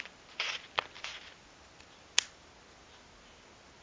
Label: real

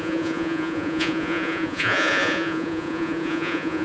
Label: fake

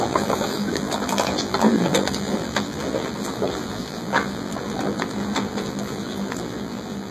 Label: fake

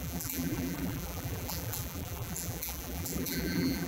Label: fake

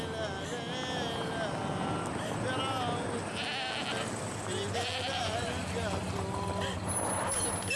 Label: real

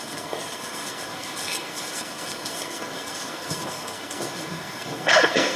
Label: fake